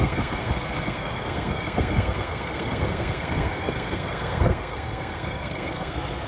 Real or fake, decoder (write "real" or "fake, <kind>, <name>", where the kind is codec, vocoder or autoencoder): fake, codec, SNAC